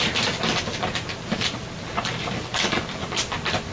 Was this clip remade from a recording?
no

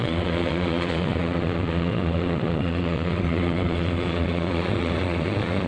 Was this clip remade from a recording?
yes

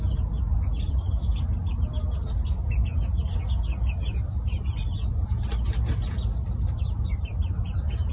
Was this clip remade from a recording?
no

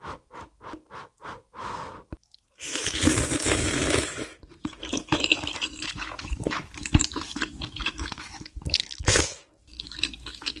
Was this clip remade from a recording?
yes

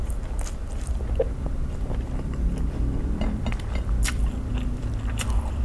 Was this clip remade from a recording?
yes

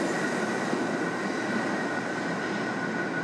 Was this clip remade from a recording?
no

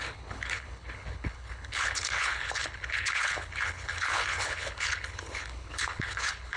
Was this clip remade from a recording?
yes